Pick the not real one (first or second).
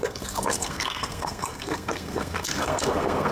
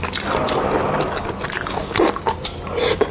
first